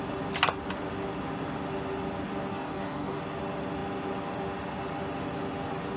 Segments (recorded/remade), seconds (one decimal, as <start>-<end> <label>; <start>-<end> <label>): 0.0-2.5 recorded; 2.5-3.2 remade; 3.2-6.0 recorded